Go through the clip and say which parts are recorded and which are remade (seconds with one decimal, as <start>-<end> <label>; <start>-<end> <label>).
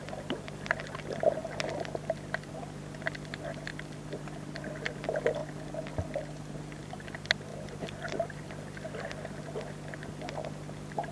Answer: 0.0-5.4 recorded; 5.4-6.6 remade; 6.6-7.5 recorded; 7.5-8.4 remade; 8.4-11.1 recorded